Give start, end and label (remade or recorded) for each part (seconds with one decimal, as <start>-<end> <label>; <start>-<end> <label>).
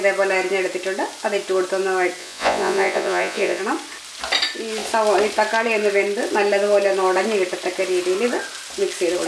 0.0-2.2 recorded; 2.2-3.6 remade; 3.6-9.3 recorded